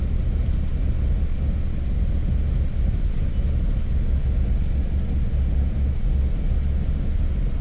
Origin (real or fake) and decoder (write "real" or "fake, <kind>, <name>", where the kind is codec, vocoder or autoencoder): real